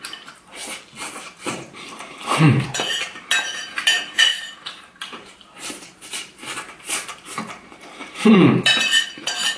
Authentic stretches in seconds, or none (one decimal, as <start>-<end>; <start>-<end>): 0.6-1.1